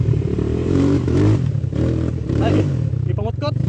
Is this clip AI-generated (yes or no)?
yes